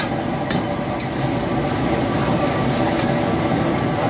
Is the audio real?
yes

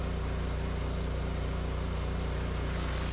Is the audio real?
yes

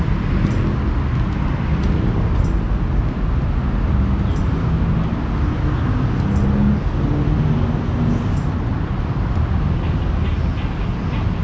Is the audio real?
yes